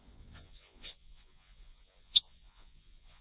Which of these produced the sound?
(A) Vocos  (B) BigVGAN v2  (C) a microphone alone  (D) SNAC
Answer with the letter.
A